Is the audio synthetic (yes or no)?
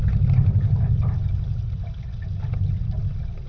no